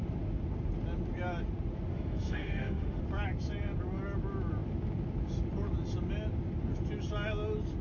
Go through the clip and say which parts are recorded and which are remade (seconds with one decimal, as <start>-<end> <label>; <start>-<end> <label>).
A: 0.0-1.9 recorded; 1.9-3.0 remade; 3.0-7.8 recorded